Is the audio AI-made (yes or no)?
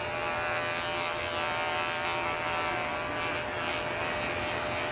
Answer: no